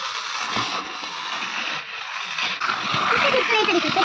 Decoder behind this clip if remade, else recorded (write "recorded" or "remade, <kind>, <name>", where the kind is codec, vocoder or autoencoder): recorded